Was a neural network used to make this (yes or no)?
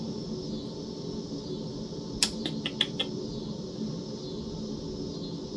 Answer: no